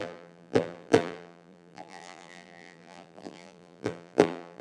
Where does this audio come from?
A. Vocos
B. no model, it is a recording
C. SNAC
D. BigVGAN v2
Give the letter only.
D